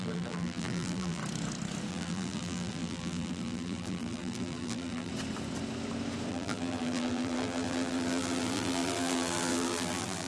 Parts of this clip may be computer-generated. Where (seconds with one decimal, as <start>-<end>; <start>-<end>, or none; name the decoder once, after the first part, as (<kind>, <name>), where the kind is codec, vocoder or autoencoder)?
0.0-1.2 (vocoder, BigVGAN v2); 1.9-5.1; 6.3-10.3